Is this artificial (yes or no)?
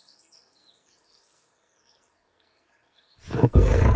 yes